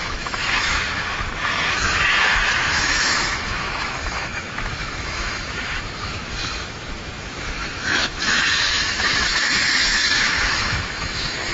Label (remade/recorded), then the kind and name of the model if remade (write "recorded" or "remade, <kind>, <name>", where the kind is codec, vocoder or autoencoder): remade, autoencoder, DAC-VAE